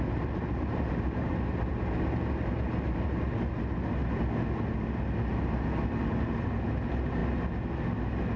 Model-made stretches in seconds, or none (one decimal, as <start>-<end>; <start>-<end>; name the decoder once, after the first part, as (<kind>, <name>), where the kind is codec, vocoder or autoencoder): none